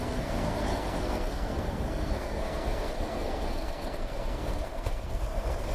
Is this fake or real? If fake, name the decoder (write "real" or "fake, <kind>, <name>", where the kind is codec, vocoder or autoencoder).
fake, codec, SNAC